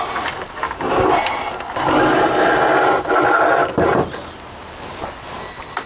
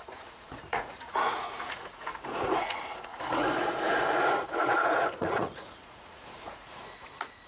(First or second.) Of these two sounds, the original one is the first